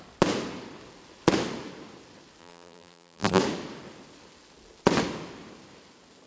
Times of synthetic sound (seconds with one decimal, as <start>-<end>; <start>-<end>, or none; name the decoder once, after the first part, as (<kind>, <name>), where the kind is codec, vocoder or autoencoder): 2.4-3.4 (vocoder, BigVGAN v2)